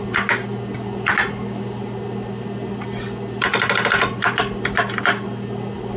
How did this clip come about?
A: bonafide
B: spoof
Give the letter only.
A